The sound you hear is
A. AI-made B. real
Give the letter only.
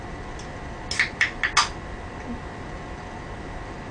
B